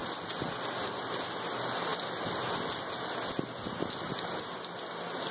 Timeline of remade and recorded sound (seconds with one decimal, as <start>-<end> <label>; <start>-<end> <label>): 0.0-5.3 recorded